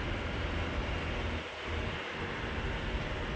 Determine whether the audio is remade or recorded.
recorded